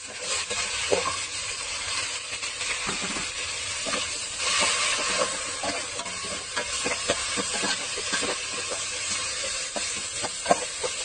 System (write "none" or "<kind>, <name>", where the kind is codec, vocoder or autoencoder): vocoder, BigVGAN v2